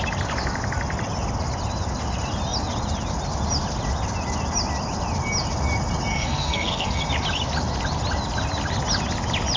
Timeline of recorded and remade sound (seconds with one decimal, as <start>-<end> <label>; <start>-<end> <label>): 0.0-6.1 recorded; 6.1-7.0 remade; 7.0-9.6 recorded